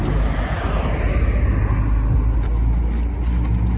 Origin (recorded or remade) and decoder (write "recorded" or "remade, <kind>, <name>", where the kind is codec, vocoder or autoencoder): recorded